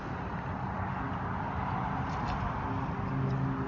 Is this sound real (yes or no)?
yes